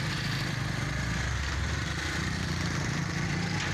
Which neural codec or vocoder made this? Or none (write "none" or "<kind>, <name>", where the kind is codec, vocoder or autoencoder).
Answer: none